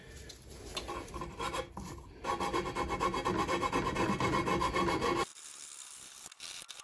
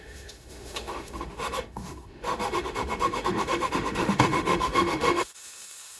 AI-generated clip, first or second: second